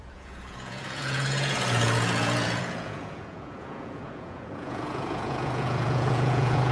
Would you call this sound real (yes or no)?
no